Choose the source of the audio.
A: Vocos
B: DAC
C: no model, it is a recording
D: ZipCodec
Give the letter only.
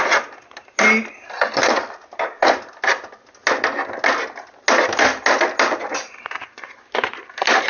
C